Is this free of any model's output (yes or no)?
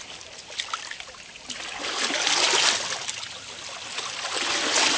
yes